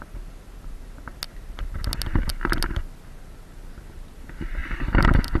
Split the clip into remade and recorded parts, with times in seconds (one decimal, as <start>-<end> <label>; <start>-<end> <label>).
0.0-5.4 recorded